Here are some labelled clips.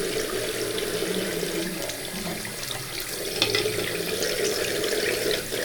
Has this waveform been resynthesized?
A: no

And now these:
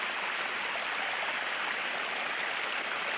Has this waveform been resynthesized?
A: no